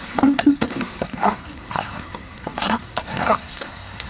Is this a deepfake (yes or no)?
yes